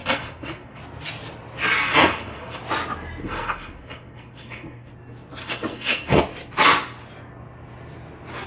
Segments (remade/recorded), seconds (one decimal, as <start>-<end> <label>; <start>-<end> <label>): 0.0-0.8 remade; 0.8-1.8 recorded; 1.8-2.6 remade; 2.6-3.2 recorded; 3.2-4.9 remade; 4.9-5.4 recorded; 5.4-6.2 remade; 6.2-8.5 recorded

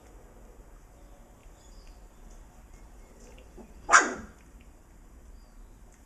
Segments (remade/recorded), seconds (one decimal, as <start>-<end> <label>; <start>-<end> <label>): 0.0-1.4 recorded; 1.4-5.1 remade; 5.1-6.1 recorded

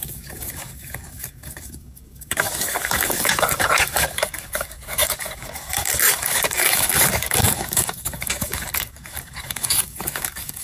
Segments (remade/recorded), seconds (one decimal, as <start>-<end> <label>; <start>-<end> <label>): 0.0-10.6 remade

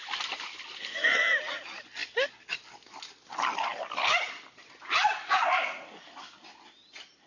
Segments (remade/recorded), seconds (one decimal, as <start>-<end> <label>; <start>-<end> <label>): 0.0-7.3 recorded